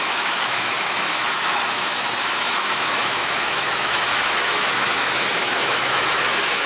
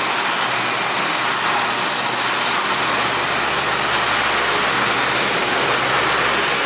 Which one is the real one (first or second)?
second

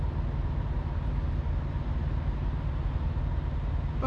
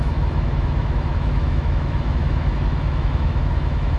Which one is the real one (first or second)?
first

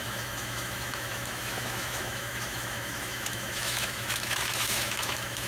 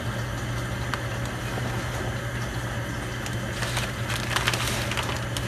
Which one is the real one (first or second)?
second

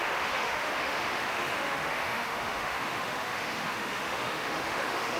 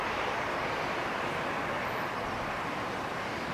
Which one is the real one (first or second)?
second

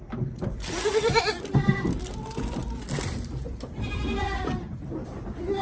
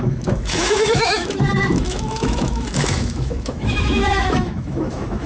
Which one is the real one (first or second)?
first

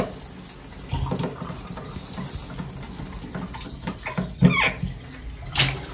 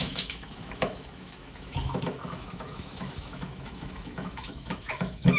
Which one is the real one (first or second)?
first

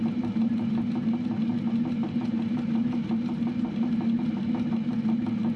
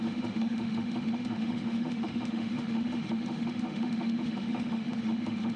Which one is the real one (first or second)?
first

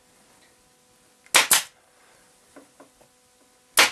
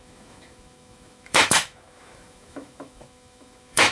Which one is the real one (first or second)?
first